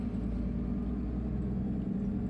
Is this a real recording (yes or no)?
yes